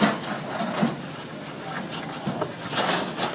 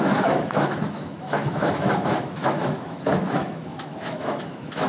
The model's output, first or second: second